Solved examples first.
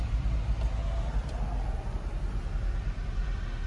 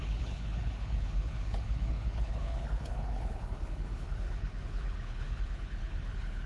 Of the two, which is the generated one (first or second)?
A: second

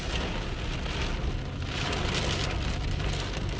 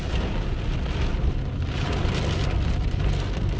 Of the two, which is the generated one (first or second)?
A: second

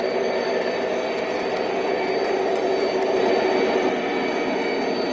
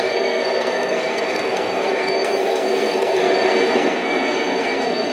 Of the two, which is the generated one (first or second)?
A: second